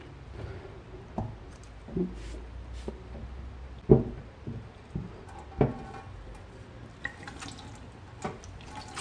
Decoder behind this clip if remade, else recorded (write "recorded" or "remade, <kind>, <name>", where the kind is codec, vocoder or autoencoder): recorded